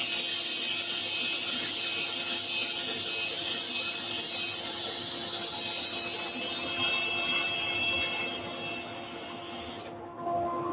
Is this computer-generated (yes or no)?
no